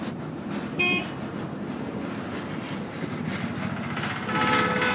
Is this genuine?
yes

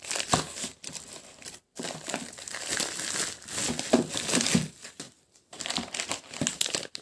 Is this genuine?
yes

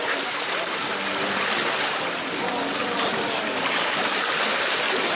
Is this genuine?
yes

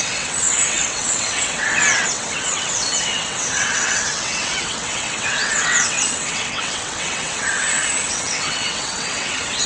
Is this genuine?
no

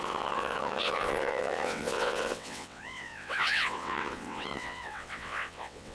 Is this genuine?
no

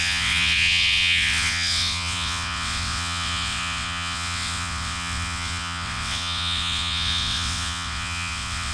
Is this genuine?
no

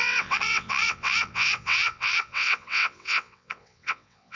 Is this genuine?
no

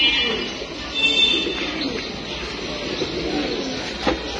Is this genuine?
yes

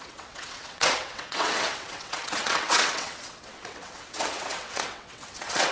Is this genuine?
no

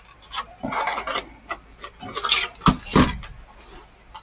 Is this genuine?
yes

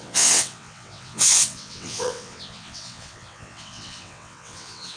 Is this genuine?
no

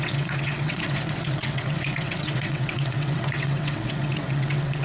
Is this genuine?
no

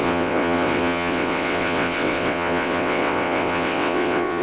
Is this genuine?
no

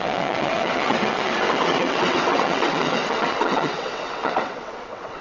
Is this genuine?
no